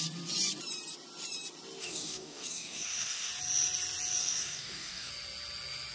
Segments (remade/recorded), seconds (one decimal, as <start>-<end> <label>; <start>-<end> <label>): 0.0-1.8 recorded; 1.8-3.3 remade; 3.3-4.2 recorded; 4.2-5.1 remade; 5.1-5.9 recorded